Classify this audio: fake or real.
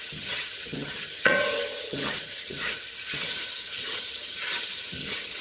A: fake